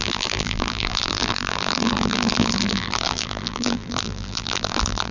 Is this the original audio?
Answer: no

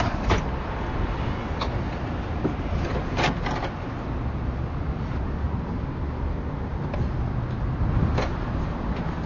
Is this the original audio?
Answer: yes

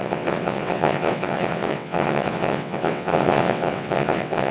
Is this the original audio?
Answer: no